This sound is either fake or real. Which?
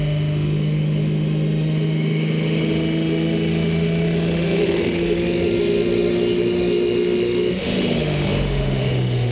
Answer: fake